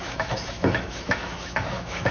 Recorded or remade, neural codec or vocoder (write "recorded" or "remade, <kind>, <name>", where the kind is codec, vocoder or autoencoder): remade, autoencoder, DAC-VAE